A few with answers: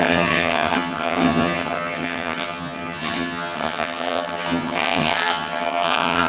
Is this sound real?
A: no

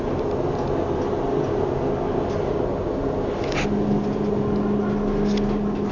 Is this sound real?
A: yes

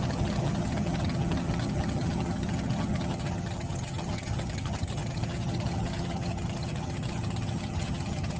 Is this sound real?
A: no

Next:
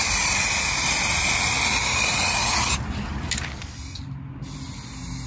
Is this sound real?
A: yes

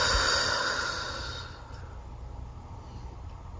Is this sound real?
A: yes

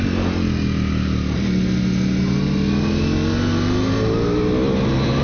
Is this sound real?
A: yes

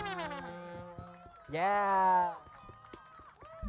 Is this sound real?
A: yes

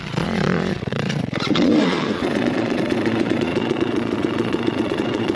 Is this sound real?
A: no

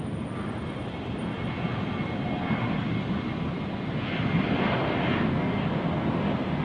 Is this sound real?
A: yes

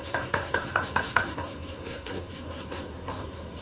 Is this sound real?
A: no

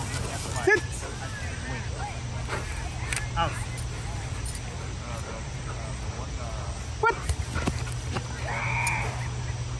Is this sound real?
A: yes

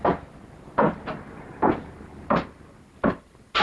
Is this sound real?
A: yes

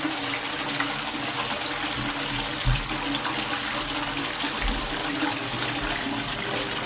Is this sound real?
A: yes